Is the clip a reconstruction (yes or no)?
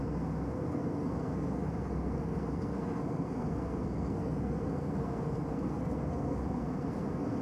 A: yes